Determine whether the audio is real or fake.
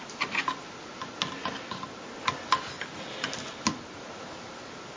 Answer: real